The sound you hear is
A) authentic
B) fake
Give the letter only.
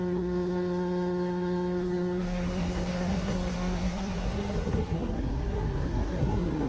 B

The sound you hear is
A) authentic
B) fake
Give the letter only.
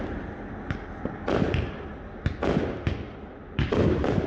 A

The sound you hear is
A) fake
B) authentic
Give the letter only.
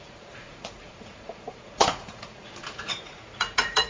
A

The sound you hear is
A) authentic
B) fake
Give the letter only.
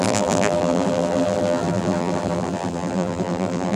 B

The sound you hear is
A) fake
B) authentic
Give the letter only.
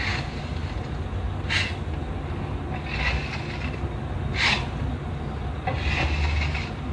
B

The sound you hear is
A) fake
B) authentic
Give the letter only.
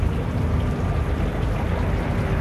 B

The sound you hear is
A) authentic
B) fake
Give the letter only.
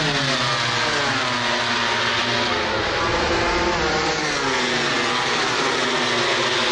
A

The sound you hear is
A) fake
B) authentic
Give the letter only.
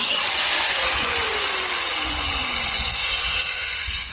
A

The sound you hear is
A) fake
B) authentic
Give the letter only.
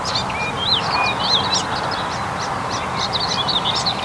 B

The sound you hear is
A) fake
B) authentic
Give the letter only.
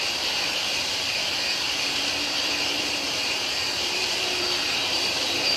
A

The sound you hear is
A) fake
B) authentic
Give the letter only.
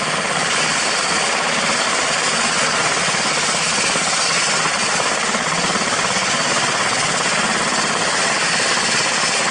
B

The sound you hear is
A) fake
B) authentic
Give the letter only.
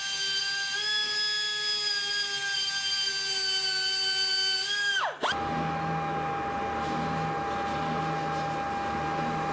B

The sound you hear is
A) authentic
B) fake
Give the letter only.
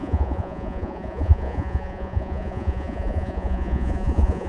B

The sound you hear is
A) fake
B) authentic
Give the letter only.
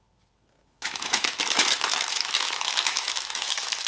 A